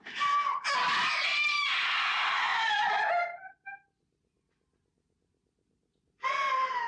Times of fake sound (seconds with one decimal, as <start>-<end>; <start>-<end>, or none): none